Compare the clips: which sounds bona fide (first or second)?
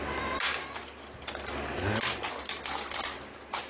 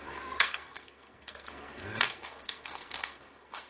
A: first